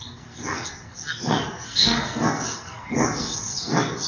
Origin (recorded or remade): remade